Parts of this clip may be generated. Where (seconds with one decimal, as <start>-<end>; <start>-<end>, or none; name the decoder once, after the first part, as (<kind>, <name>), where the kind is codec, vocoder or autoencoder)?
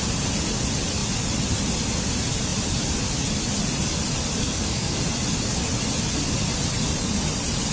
4.4-5.0 (codec, SNAC)